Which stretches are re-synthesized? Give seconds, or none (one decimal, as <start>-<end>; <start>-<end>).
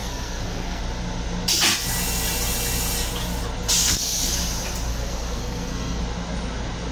0.0-0.8; 3.8-4.4; 4.9-6.0